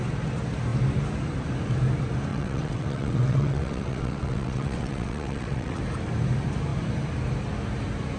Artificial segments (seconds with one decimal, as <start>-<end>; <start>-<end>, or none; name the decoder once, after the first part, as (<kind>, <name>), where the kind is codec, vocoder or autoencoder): 2.3-5.8 (vocoder, WaveNeXt)